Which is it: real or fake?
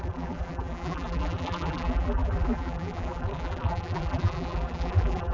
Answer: fake